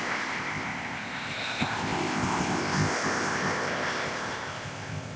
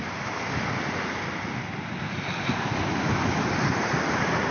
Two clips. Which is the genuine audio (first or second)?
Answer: second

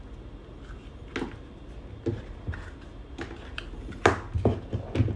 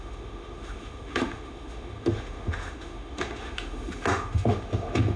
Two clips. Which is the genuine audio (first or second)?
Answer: first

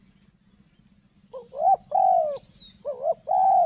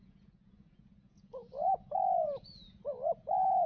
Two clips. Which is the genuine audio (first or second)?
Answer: first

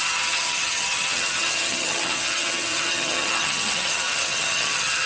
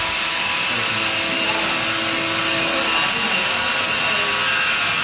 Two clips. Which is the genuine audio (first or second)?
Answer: second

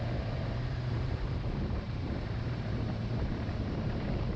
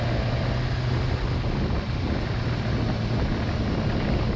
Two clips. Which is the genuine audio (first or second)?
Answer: second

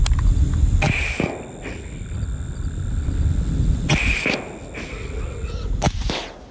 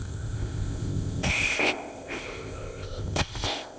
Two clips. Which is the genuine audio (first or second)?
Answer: first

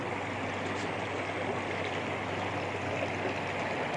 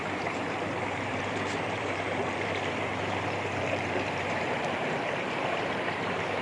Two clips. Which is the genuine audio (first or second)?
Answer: first